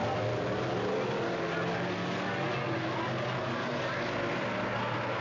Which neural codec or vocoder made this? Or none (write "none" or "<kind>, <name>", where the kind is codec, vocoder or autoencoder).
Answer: none